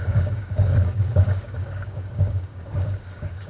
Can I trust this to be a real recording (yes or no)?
no